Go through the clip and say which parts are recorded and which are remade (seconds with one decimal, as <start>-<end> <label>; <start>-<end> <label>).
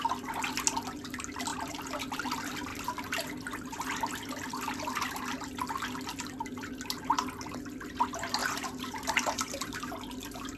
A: 0.0-1.5 recorded; 1.5-2.2 remade; 2.2-8.4 recorded; 8.4-9.9 remade; 9.9-10.6 recorded